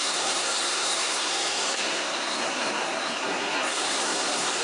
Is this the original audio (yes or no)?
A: no